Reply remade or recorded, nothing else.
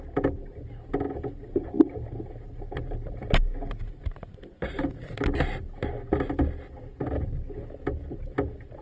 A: recorded